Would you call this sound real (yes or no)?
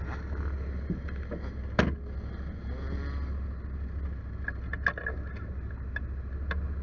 yes